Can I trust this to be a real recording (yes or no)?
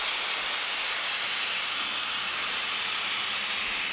yes